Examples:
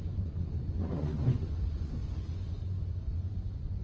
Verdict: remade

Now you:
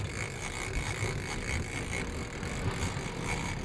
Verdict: recorded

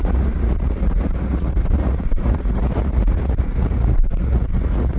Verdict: remade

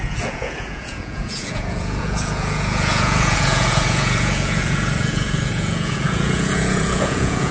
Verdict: remade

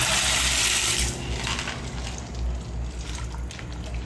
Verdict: recorded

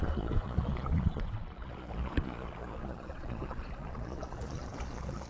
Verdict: remade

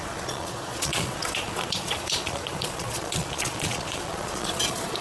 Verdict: remade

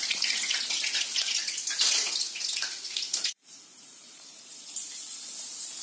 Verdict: remade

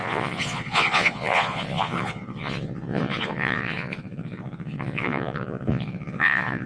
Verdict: remade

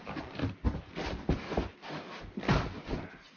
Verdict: recorded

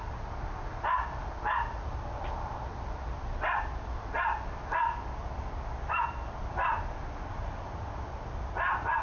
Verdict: recorded